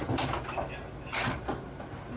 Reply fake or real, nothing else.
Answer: real